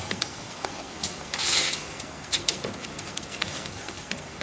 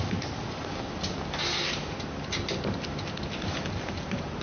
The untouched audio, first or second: second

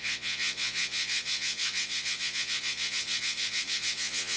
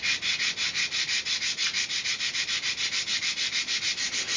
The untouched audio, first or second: second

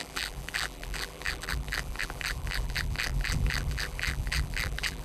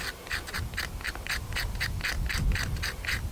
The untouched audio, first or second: second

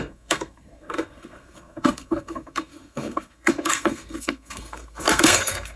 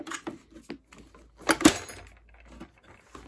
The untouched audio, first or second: second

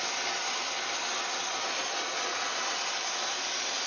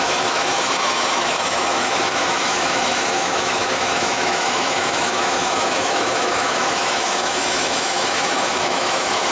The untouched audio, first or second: first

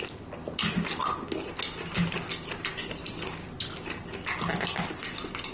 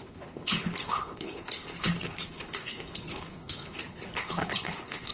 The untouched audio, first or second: first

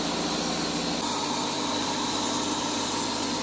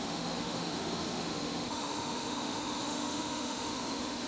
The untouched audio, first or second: first